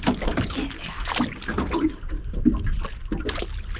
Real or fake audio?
real